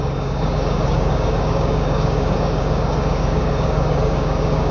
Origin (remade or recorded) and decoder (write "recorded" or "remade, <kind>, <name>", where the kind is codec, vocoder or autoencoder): remade, codec, DAC